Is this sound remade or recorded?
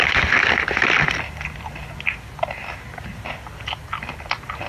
recorded